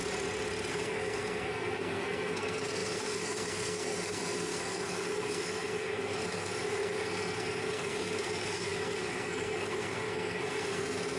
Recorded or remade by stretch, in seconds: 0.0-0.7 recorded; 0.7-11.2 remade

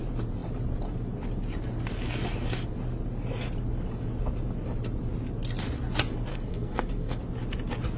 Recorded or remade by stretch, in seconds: 0.0-6.3 recorded; 6.3-7.2 remade; 7.2-8.0 recorded